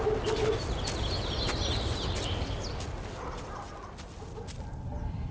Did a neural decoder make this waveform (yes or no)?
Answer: no